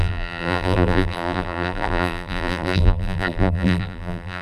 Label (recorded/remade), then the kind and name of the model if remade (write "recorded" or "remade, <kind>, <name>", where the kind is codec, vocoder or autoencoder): remade, vocoder, BigVGAN v2